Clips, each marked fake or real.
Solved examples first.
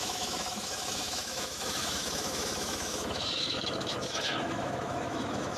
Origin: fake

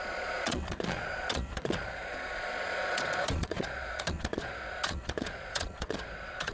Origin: fake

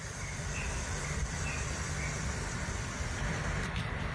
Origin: fake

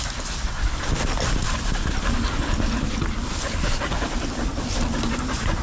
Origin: real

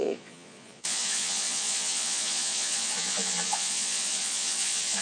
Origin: fake